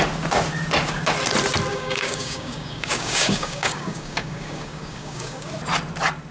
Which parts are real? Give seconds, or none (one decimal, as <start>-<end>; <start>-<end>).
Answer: 0.0-1.7; 5.5-6.3